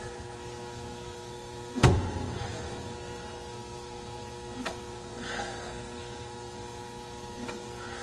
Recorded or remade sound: remade